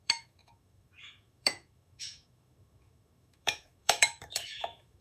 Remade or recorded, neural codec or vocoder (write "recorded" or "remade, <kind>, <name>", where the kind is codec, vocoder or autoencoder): remade, autoencoder, DAC-VAE